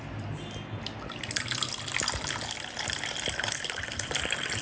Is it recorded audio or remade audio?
recorded